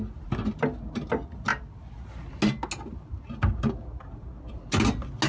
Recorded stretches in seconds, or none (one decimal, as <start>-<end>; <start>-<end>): 0.0-5.3